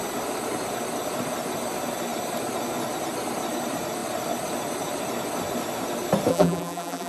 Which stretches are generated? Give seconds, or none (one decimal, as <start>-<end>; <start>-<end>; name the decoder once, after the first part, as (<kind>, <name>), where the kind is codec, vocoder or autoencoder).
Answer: 6.3-7.1 (vocoder, BigVGAN v2)